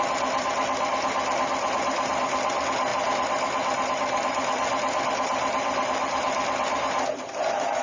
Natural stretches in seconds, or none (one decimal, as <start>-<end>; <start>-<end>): 0.0-7.8